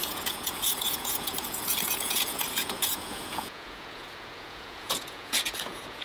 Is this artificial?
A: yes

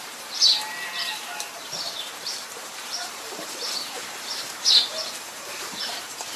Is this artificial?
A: yes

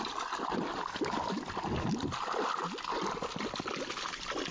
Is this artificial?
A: no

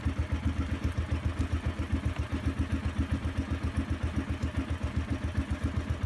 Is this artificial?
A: no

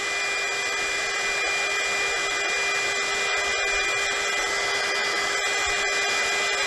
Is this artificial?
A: no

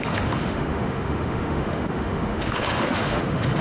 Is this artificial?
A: yes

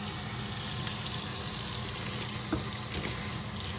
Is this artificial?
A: no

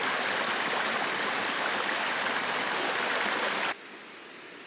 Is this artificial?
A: no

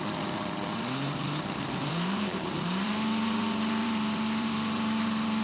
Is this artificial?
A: yes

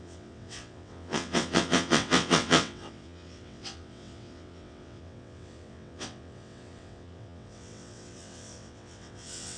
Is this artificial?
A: yes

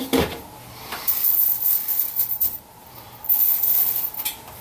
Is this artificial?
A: yes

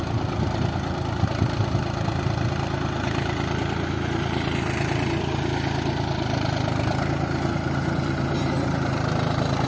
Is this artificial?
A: no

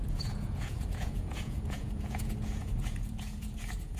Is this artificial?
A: yes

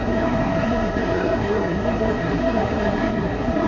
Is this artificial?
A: yes